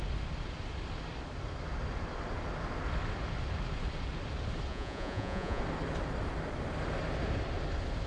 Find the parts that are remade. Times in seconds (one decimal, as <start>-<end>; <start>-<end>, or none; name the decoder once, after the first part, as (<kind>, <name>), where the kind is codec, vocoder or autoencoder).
4.7-5.6 (vocoder, Vocos)